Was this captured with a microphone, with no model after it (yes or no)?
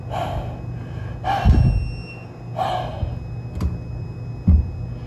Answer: yes